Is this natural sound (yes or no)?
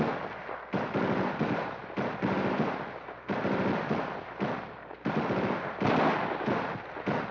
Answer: yes